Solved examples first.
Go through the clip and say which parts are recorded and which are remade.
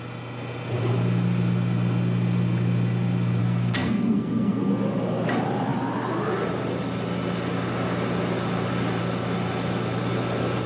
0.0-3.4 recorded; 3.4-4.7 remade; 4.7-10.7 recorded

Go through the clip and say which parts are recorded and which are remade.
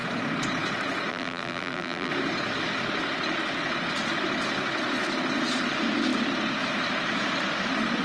0.0-1.1 recorded; 1.1-2.1 remade; 2.1-8.0 recorded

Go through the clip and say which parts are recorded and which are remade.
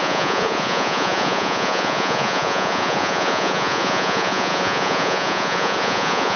0.0-6.4 remade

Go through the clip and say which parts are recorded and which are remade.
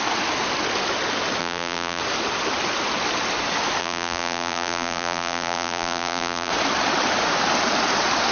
0.0-1.4 recorded; 1.4-2.0 remade; 2.0-3.8 recorded; 3.8-6.5 remade; 6.5-8.3 recorded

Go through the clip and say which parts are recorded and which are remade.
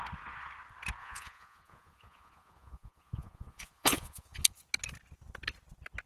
0.0-1.0 recorded; 1.0-4.7 remade; 4.7-6.1 recorded